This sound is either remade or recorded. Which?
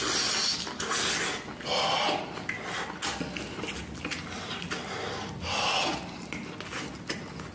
recorded